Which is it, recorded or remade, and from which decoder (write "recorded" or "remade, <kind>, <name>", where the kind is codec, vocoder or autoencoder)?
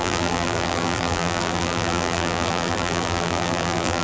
remade, vocoder, BigVGAN v2